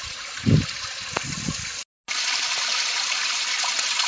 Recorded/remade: recorded